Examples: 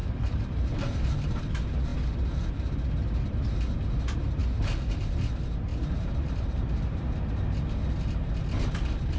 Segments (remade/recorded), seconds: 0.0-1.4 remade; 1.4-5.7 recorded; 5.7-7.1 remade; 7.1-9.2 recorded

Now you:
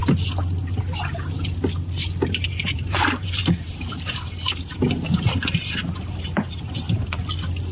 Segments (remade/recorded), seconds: 0.0-2.6 recorded; 2.6-7.2 remade; 7.2-7.7 recorded